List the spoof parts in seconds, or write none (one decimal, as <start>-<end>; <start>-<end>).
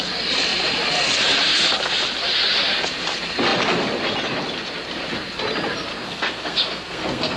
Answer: 5.9-7.4